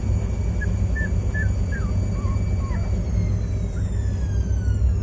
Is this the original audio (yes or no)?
yes